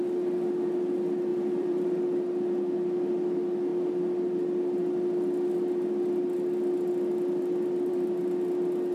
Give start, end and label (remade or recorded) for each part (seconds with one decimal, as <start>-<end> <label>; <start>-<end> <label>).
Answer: 0.0-1.3 recorded; 1.3-2.0 remade; 2.0-8.9 recorded